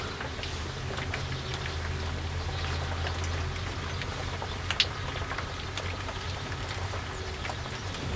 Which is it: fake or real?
real